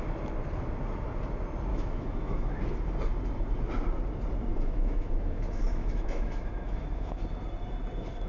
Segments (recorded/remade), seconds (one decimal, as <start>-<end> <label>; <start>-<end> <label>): 0.0-1.7 recorded; 1.7-2.5 remade; 2.5-4.5 recorded; 4.5-7.2 remade; 7.2-8.3 recorded